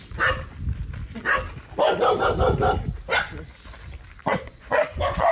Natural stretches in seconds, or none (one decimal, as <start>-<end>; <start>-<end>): 0.0-4.2